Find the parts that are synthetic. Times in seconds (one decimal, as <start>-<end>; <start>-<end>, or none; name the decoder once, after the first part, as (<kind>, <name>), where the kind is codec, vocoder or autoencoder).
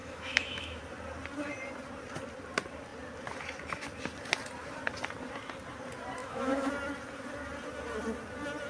0.0-0.8 (autoencoder, DAC-VAE); 6.2-6.7